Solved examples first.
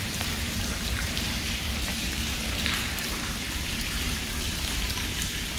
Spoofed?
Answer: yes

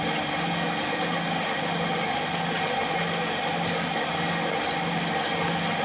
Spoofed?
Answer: no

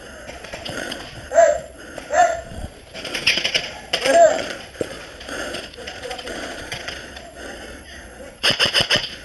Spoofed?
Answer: yes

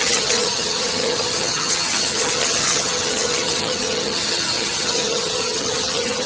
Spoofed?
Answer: yes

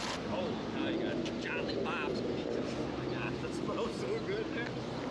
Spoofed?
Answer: no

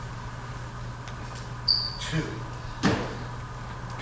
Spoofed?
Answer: no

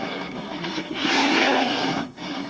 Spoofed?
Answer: yes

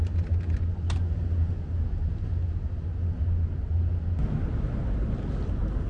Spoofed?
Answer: no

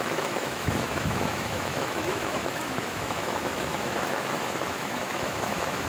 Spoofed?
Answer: yes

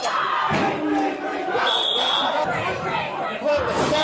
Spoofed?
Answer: no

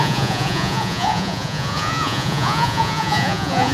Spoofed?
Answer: yes